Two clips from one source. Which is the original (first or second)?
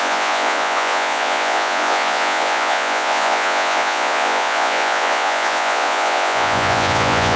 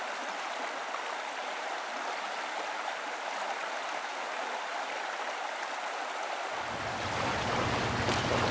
second